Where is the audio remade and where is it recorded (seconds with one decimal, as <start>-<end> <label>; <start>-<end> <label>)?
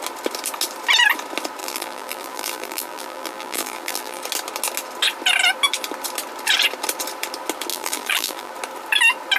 0.0-1.6 recorded; 1.6-4.2 remade; 4.2-7.7 recorded; 7.7-8.5 remade; 8.5-9.4 recorded